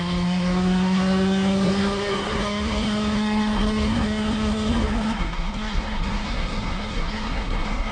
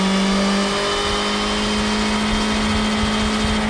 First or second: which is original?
second